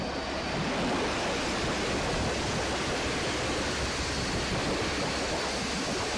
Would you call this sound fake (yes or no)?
no